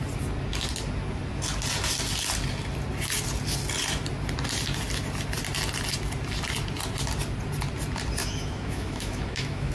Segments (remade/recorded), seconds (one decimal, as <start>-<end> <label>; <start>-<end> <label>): 0.0-8.2 recorded; 8.2-9.7 remade